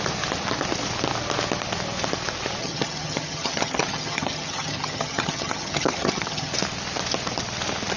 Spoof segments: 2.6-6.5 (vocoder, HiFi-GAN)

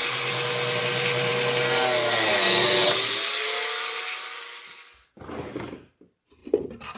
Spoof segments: none

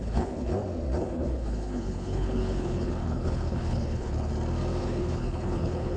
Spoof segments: 0.0-0.5 (codec, HILCodec); 1.0-4.3; 4.8-6.0

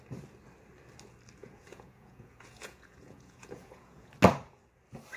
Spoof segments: 1.4-4.1 (vocoder, Vocos)

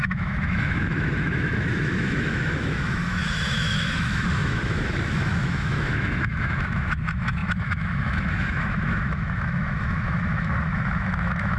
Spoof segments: 0.0-11.6 (autoencoder, DAC-VAE)

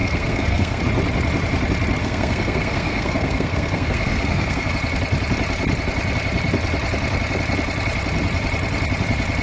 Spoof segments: 0.0-0.8 (codec, SNAC); 2.0-4.7

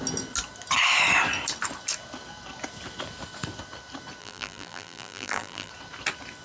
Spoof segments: 4.2-5.7 (vocoder, BigVGAN v2)